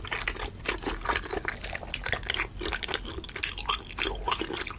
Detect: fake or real real